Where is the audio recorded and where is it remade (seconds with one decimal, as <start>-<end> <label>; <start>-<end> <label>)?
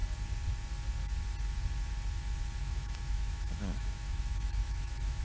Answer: 0.0-2.6 recorded; 2.6-5.2 remade